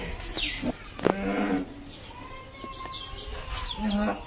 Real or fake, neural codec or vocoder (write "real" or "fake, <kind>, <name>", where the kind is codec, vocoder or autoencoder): real